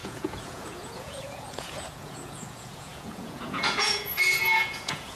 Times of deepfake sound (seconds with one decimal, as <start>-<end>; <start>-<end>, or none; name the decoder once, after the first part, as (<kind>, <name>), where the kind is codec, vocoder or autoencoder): 0.0-5.2 (vocoder, Vocos)